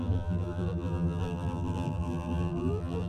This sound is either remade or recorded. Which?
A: remade